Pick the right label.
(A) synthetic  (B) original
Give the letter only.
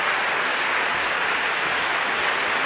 B